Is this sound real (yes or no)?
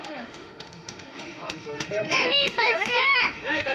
no